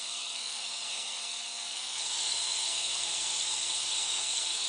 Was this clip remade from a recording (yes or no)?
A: yes